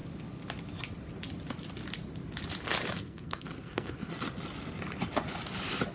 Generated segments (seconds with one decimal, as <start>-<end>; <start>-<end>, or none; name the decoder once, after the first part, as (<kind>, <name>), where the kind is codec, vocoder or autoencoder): 3.0-4.1 (codec, SNAC)

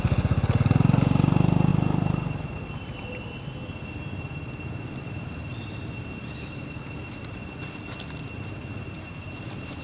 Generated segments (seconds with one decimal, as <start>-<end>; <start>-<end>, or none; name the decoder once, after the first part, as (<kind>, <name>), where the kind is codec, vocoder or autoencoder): none

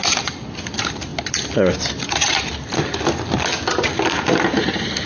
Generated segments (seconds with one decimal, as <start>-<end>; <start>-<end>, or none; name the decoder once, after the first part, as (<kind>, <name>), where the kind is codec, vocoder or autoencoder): none

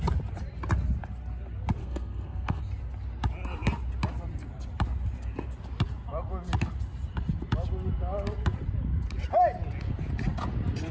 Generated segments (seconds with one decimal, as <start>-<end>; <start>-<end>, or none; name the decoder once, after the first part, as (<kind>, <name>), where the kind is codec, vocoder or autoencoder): 1.8-2.6 (codec, SNAC)

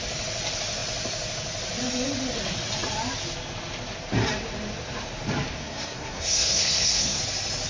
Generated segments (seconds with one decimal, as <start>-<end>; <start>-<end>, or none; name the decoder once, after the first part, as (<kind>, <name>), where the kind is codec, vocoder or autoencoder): 5.6-7.2 (codec, SNAC)

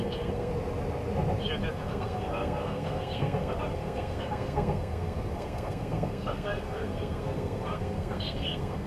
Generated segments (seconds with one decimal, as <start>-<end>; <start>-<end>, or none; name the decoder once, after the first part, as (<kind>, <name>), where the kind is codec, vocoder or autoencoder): 0.0-0.5 (codec, SNAC); 1.7-8.9

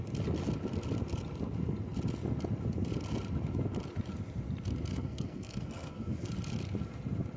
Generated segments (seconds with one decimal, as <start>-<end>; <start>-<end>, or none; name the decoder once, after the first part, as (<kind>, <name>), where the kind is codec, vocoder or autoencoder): 4.9-6.3 (codec, SNAC)

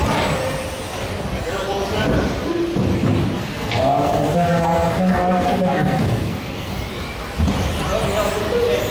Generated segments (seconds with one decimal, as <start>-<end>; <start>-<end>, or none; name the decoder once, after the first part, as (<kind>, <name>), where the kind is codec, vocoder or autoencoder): 3.4-6.7 (codec, SNAC)